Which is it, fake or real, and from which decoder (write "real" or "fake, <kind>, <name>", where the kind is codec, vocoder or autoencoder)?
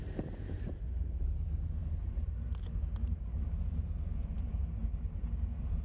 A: fake, vocoder, BigVGAN v2